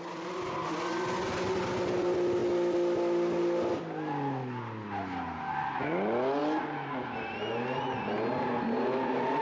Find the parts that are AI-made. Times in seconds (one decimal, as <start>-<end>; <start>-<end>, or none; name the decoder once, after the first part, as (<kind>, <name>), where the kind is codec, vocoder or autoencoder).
none